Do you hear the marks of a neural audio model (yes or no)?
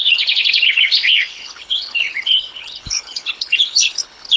yes